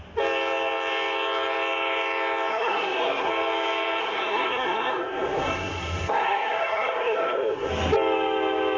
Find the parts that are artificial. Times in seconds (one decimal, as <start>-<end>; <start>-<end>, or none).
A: 2.5-3.3; 4.0-7.7